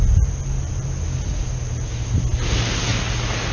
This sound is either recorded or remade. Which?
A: recorded